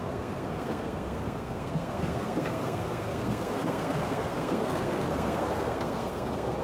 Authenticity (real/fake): fake